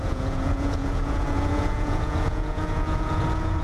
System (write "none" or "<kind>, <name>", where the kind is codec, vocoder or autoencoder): vocoder, Vocos